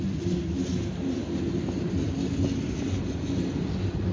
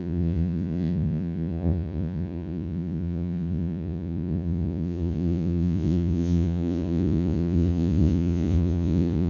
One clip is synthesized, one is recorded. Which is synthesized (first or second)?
second